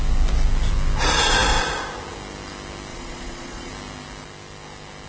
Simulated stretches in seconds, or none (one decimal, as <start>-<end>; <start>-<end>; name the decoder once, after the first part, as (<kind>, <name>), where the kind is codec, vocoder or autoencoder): 2.9-3.7 (vocoder, Vocos)